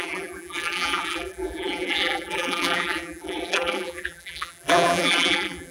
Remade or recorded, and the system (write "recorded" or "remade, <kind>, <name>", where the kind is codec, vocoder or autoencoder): remade, vocoder, BigVGAN v2